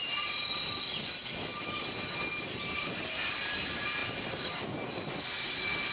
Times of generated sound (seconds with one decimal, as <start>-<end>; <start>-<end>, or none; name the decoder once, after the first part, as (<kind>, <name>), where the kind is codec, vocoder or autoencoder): none